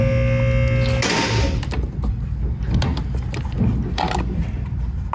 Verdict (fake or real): real